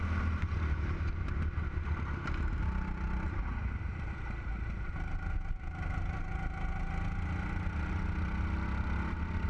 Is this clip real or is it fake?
real